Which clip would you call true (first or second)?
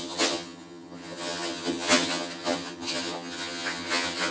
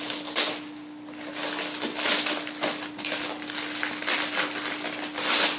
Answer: second